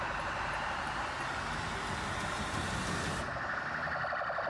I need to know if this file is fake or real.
real